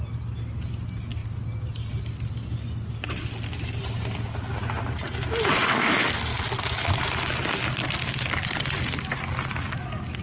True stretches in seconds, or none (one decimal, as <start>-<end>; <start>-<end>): 0.0-10.2